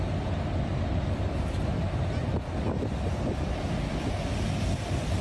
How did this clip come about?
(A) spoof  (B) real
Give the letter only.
B